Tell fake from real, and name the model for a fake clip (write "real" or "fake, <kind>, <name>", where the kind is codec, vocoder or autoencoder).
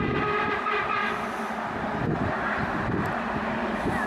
real